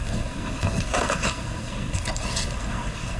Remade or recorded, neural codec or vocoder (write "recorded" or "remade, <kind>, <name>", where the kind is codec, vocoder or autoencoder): remade, codec, SNAC